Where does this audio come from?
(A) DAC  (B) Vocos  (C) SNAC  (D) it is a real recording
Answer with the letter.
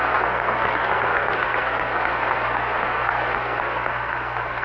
C